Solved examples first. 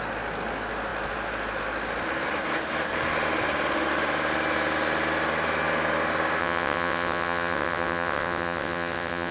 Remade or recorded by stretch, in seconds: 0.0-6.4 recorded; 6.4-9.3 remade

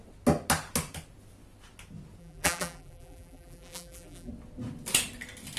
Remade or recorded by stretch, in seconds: 0.0-2.2 recorded; 2.2-4.3 remade; 4.3-5.6 recorded

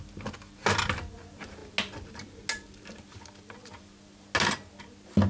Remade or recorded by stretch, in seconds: 0.0-5.3 recorded

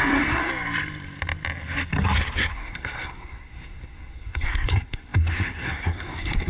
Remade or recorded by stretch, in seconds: 0.0-0.5 remade; 0.5-2.5 recorded; 2.5-6.5 remade